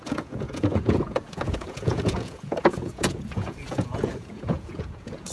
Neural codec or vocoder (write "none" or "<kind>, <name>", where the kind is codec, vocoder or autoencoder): vocoder, Vocos